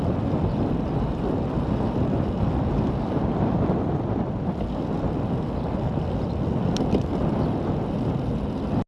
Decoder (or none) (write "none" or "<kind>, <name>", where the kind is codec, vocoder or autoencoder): none